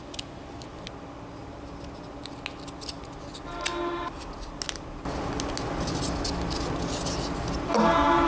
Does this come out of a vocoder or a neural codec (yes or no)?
no